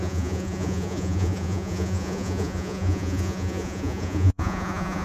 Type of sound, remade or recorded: remade